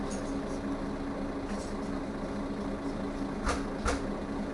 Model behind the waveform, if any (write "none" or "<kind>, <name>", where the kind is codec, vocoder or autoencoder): none